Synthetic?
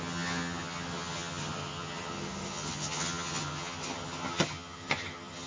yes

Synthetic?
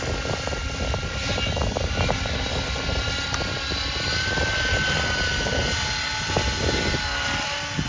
no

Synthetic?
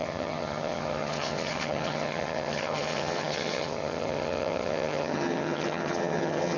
yes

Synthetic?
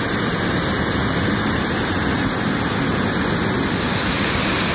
no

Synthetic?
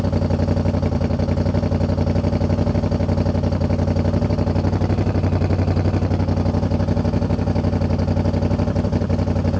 no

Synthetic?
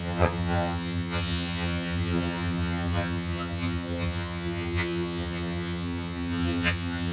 yes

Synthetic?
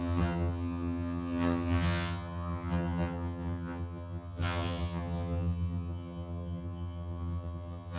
yes